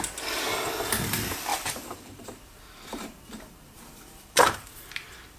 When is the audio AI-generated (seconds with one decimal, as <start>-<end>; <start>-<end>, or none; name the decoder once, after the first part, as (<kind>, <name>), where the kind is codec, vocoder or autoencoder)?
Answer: 1.5-4.7 (vocoder, BigVGAN v2)